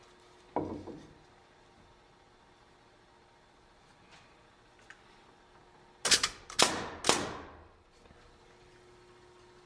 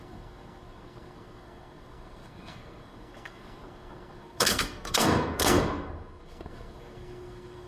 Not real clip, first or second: second